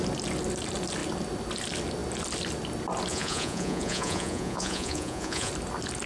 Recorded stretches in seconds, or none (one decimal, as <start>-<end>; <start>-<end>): 0.0-3.1; 5.5-6.1